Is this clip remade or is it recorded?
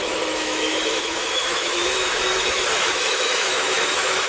remade